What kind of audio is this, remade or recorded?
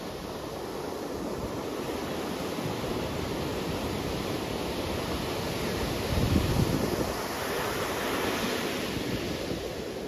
recorded